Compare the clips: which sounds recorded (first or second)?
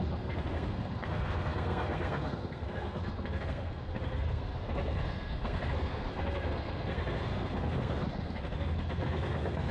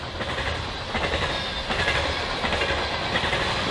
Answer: second